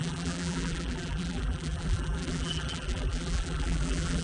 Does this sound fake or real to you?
fake